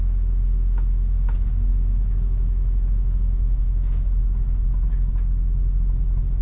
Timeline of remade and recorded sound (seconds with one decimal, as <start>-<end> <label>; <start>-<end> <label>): 0.0-1.7 recorded; 1.7-4.2 remade; 4.2-6.4 recorded